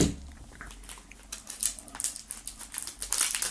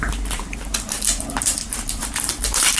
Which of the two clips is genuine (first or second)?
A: first